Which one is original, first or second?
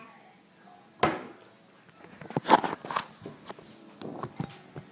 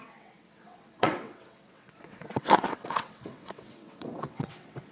first